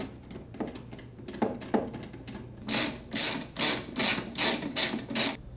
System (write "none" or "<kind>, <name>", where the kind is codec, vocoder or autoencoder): none